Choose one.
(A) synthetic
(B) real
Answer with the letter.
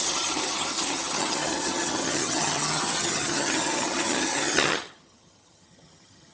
A